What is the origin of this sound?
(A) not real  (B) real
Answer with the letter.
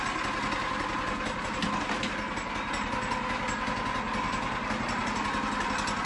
B